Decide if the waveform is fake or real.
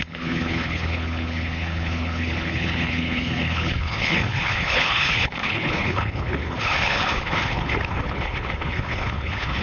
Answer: fake